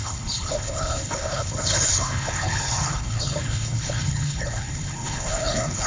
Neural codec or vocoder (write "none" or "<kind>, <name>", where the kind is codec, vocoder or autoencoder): codec, HILCodec